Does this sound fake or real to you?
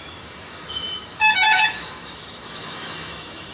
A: fake